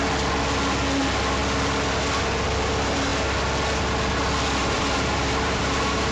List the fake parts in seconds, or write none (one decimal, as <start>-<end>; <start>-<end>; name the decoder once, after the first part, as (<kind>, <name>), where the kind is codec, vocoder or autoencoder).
4.6-5.6 (vocoder, BigVGAN v2)